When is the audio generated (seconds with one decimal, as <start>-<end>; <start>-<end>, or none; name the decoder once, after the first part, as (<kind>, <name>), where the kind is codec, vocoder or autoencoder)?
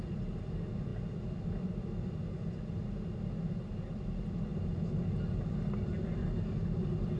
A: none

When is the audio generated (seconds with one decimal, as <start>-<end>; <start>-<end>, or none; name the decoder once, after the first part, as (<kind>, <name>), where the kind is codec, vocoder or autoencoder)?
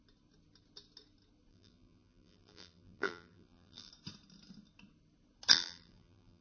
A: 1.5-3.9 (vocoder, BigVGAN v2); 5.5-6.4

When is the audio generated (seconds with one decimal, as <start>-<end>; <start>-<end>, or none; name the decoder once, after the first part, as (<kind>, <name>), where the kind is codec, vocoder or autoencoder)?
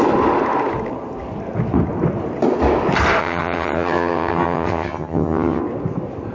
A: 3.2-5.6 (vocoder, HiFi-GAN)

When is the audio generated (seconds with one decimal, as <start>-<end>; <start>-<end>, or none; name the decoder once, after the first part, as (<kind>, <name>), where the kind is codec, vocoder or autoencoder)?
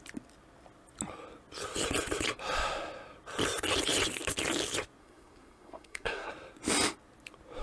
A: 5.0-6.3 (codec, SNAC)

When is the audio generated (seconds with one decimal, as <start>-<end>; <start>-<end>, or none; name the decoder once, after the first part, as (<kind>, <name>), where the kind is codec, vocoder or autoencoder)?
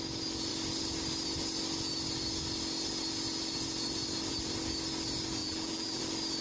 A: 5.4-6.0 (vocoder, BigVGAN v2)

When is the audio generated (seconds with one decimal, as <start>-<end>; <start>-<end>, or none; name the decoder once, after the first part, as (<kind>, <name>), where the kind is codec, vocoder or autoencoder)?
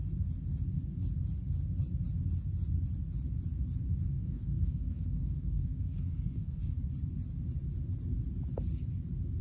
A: 4.2-6.6 (codec, SNAC)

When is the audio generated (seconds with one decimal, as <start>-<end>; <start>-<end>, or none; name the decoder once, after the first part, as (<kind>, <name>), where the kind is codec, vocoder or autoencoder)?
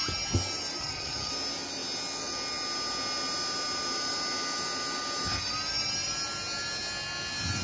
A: 0.8-1.3 (vocoder, HiFi-GAN)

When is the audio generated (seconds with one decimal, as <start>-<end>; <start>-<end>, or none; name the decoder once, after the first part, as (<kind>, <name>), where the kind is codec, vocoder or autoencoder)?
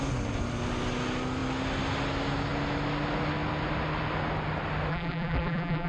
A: 4.9-5.9 (vocoder, BigVGAN v2)